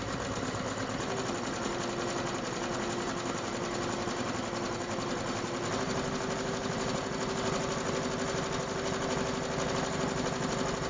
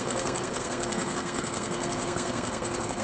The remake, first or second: second